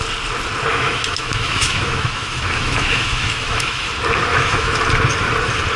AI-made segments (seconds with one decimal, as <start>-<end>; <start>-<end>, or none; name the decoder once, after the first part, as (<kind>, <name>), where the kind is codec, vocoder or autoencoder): 0.7-3.9 (autoencoder, DAC-VAE); 4.3-4.8